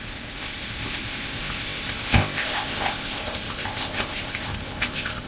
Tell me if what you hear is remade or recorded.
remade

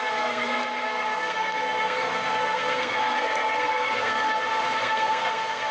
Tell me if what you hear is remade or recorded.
remade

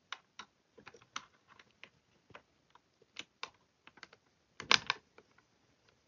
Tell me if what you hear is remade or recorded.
recorded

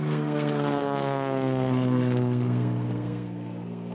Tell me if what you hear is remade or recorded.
remade